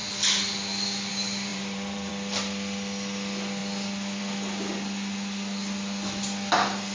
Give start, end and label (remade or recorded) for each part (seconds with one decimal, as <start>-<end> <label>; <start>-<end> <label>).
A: 0.0-1.5 recorded; 1.5-2.1 remade; 2.1-6.9 recorded